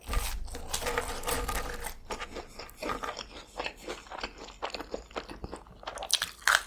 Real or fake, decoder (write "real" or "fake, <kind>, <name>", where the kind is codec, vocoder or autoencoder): real